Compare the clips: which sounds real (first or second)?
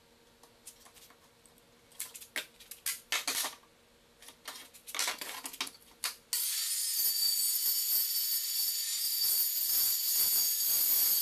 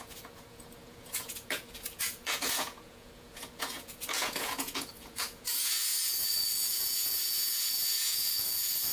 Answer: first